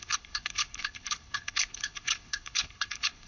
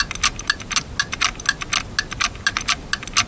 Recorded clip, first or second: second